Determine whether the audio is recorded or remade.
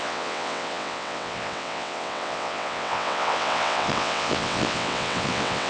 remade